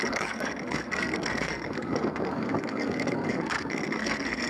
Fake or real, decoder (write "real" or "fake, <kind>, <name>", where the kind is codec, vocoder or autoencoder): fake, codec, SNAC